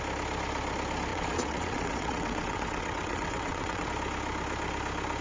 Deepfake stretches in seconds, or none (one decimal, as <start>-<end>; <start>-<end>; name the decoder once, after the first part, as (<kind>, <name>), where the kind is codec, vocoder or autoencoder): 1.1-3.9 (vocoder, WaveNeXt)